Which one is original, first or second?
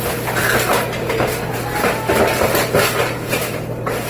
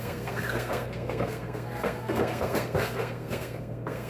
first